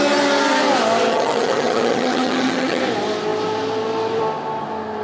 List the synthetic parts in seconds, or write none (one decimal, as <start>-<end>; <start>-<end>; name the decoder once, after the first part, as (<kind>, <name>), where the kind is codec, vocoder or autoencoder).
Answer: 1.1-2.8 (vocoder, HiFi-GAN)